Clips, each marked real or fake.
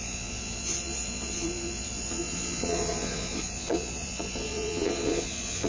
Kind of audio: fake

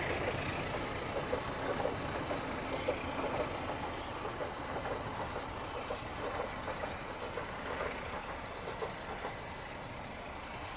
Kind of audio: real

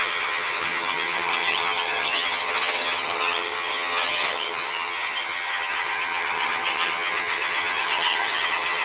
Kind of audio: fake